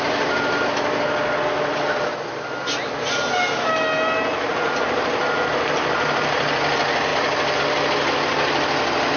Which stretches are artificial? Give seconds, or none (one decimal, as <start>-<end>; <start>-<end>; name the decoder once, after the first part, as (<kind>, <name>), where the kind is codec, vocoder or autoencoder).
none